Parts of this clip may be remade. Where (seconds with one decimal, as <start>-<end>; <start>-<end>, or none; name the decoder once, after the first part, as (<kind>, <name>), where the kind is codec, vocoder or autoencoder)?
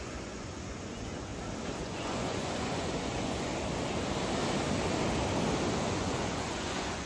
0.0-1.3 (vocoder, Vocos); 1.8-3.5; 5.8-7.1